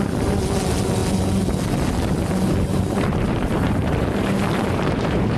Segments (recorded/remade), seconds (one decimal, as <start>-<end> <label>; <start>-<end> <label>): 0.0-2.7 recorded; 2.7-5.4 remade